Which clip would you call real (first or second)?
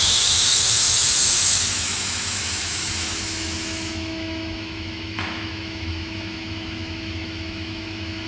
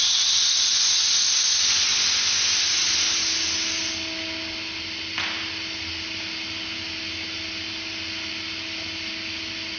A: second